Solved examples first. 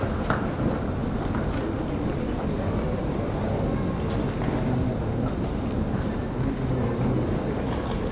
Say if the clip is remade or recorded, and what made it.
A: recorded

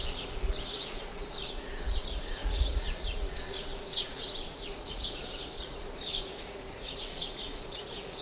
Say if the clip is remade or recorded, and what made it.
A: remade, vocoder, Vocos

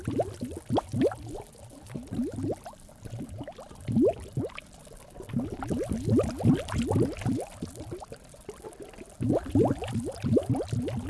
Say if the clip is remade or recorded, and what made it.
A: recorded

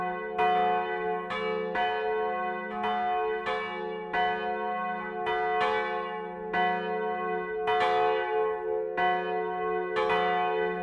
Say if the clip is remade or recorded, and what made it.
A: recorded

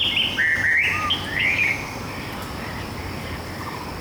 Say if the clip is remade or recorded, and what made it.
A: recorded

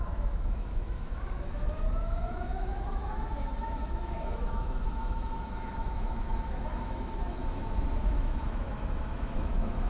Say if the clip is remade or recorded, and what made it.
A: remade, autoencoder, DAC-VAE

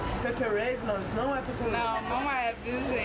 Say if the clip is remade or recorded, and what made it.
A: recorded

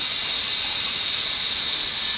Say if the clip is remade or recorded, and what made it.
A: recorded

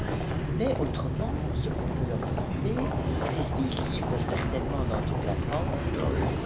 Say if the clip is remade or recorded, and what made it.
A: recorded